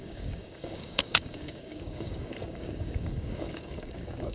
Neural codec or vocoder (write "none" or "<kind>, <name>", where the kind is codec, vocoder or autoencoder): codec, DAC